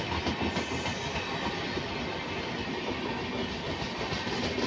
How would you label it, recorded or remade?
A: recorded